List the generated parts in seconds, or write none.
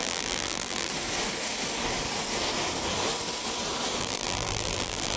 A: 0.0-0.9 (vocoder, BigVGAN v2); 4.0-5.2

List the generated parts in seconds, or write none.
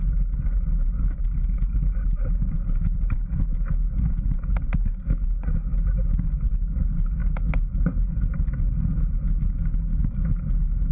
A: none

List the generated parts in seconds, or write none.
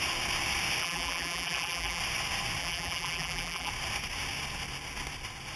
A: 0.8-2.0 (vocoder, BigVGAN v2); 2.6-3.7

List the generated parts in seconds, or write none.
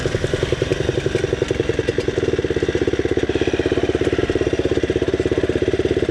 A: none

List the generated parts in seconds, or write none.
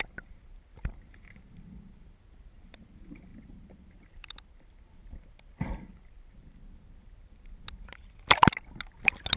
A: 3.3-7.3 (vocoder, BigVGAN v2)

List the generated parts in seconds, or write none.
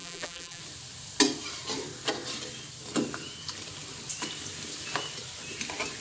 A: 0.0-0.6 (vocoder, BigVGAN v2)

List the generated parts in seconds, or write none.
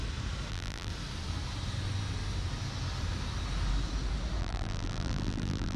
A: 0.5-0.9 (vocoder, BigVGAN v2); 4.4-5.8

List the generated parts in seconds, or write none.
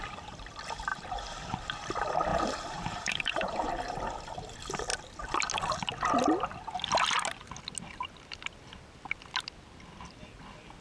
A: 0.9-1.6 (vocoder, BigVGAN v2); 2.3-3.7